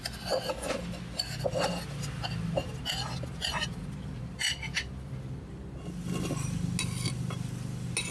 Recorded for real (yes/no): yes